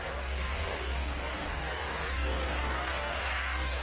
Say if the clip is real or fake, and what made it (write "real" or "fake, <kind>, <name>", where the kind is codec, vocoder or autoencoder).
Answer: fake, codec, DAC